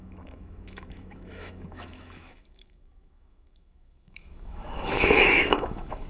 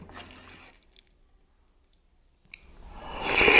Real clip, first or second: second